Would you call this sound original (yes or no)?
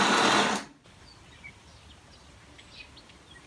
yes